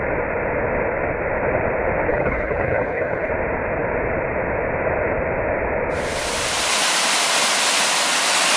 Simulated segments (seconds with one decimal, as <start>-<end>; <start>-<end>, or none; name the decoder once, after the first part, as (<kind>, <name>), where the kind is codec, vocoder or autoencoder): 2.1-3.3 (codec, HILCodec)